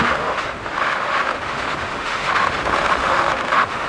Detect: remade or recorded remade